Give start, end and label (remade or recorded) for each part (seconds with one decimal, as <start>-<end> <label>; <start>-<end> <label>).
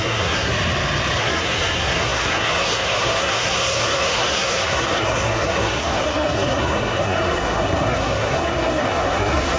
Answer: 0.0-0.5 remade; 0.5-1.2 recorded; 1.2-9.6 remade